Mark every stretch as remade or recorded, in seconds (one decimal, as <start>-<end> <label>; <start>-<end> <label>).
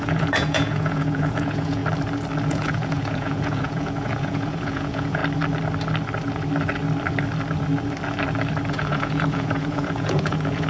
0.0-1.8 remade; 1.8-2.5 recorded; 2.5-5.2 remade; 5.2-8.7 recorded; 8.7-10.7 remade